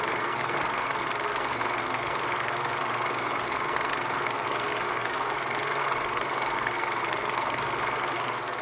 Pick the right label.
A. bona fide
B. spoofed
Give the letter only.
B